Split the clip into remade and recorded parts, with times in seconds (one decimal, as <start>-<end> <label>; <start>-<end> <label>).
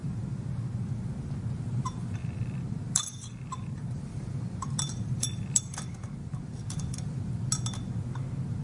0.0-1.3 remade; 1.3-2.2 recorded; 2.2-7.2 remade; 7.2-8.6 recorded